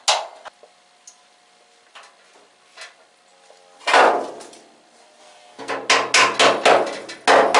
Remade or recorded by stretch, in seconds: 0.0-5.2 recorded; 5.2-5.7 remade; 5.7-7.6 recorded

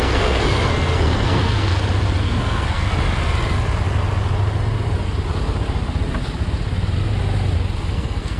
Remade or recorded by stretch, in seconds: 0.0-1.7 remade; 1.7-2.2 recorded; 2.2-2.9 remade; 2.9-7.9 recorded; 7.9-8.4 remade

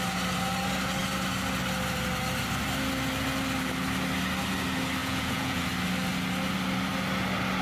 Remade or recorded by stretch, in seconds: 0.0-5.0 recorded; 5.0-5.6 remade; 5.6-7.6 recorded

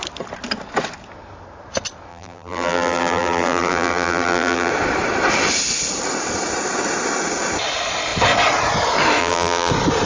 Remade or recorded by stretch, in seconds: 0.0-2.1 recorded; 2.1-4.7 remade; 4.7-9.2 recorded; 9.2-9.7 remade; 9.7-10.1 recorded

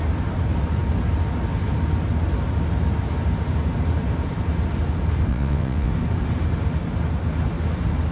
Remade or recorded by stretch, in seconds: 0.0-5.3 recorded; 5.3-5.9 remade; 5.9-8.1 recorded

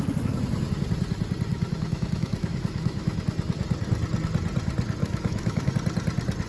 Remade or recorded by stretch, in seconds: 0.0-1.5 recorded; 1.5-3.2 remade; 3.2-5.0 recorded; 5.0-5.7 remade; 5.7-6.5 recorded